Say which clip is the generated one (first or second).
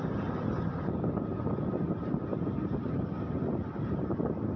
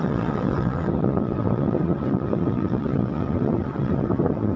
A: second